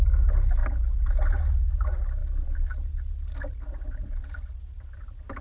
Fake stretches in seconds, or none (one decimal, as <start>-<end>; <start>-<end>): none